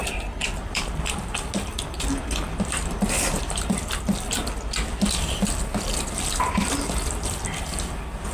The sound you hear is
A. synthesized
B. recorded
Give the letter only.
B